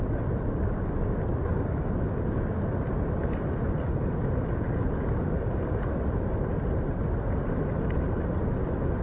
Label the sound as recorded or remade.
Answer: recorded